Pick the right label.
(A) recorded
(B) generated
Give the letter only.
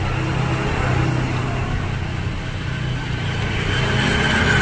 A